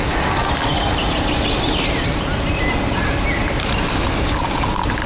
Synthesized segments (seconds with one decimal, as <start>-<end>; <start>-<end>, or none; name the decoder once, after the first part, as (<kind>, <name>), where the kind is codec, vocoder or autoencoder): none